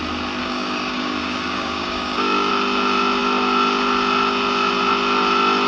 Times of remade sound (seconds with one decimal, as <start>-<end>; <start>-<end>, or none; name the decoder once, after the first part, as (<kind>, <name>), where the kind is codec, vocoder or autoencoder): 0.4-2.5 (codec, DAC)